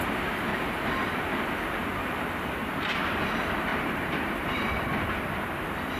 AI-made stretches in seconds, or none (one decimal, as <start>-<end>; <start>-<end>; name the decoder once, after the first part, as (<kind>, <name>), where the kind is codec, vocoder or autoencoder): 0.5-1.1 (vocoder, BigVGAN v2); 3.7-4.7